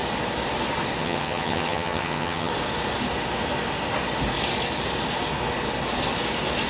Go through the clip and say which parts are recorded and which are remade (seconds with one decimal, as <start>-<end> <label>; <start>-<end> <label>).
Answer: 0.0-1.0 recorded; 1.0-2.5 remade; 2.5-6.7 recorded